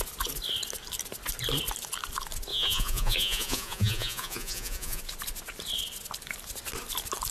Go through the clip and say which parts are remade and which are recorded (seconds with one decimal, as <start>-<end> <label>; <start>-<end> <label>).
0.0-2.5 recorded; 2.5-5.0 remade; 5.0-7.3 recorded